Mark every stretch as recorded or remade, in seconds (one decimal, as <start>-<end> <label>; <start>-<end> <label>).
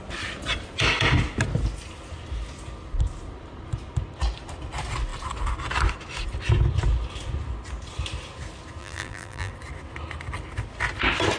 0.0-8.8 recorded; 8.8-9.5 remade; 9.5-11.4 recorded